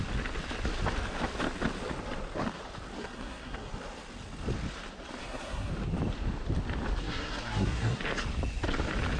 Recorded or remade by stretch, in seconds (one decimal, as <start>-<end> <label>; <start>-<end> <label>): 0.0-3.0 recorded; 3.0-3.7 remade; 3.7-5.2 recorded; 5.2-5.7 remade; 5.7-7.0 recorded; 7.0-8.0 remade; 8.0-9.2 recorded